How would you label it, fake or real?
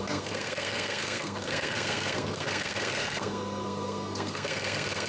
fake